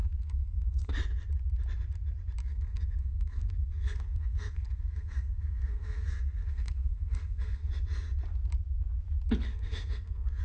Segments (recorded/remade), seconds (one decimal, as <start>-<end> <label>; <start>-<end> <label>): 0.0-0.9 remade; 0.9-2.4 recorded; 2.4-7.7 remade; 7.7-9.5 recorded; 9.5-10.4 remade